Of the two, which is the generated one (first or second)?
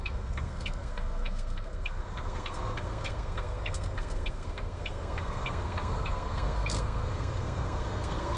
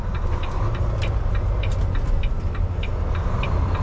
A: first